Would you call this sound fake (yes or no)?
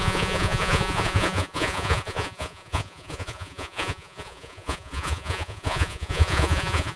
yes